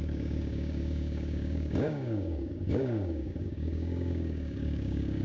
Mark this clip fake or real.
fake